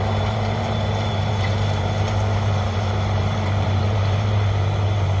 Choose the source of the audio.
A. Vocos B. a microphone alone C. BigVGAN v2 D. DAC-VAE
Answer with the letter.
C